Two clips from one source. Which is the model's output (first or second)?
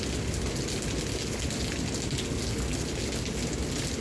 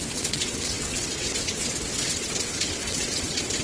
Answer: second